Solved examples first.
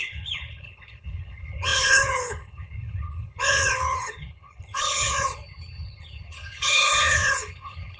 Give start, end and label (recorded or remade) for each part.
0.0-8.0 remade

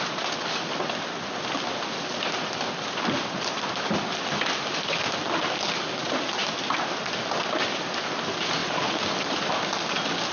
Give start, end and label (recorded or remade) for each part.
0.0-8.6 recorded; 8.6-9.5 remade; 9.5-10.3 recorded

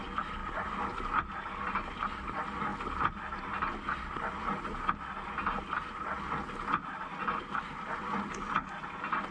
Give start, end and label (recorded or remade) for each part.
0.0-9.3 recorded

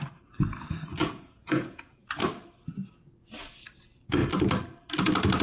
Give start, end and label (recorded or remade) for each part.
0.0-1.0 recorded; 1.0-2.0 remade; 2.0-5.4 recorded